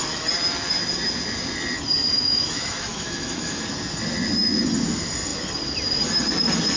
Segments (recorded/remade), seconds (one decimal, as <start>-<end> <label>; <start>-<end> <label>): 0.0-2.1 recorded; 2.1-3.6 remade; 3.6-6.8 recorded